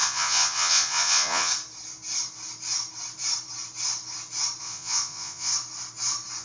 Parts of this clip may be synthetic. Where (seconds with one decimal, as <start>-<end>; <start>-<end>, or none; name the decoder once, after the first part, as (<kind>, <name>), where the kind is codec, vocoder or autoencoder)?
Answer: 0.0-1.5 (vocoder, Vocos); 4.6-5.5